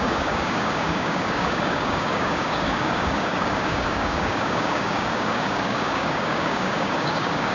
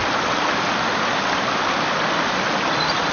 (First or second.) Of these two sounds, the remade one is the first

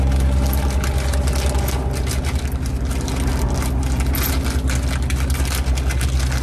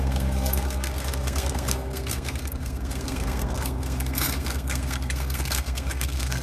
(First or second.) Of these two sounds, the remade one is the second